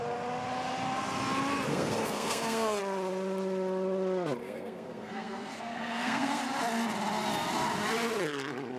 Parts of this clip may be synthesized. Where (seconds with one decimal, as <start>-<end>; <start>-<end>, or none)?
1.7-2.8; 4.4-6.4

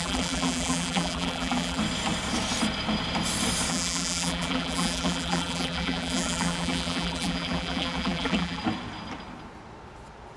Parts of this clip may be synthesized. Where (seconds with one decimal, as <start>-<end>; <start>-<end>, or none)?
0.0-1.8; 3.7-8.6

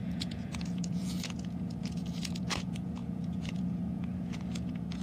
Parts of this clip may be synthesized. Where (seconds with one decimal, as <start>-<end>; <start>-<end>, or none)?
0.0-5.0

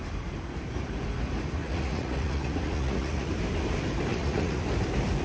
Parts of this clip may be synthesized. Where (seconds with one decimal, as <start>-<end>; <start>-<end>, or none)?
1.6-3.3; 4.1-4.6

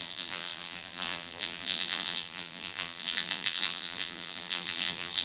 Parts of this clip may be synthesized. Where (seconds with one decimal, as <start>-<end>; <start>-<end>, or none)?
0.0-5.2

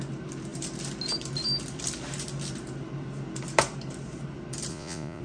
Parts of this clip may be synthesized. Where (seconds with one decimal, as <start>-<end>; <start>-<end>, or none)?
4.7-5.2